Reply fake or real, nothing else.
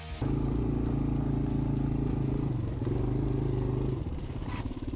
real